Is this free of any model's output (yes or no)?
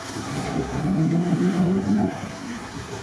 no